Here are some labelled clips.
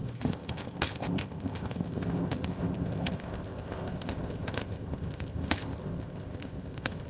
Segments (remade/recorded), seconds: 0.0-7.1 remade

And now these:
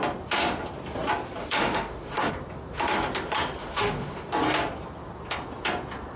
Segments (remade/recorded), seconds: 0.0-1.4 recorded; 1.4-2.3 remade; 2.3-3.6 recorded; 3.6-4.3 remade; 4.3-6.2 recorded

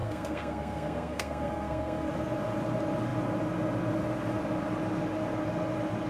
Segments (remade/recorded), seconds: 0.0-2.1 remade; 2.1-6.1 recorded

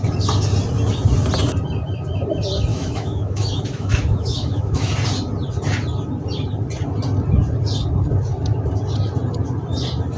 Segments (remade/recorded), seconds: 0.0-2.7 recorded; 2.7-4.9 remade; 4.9-10.2 recorded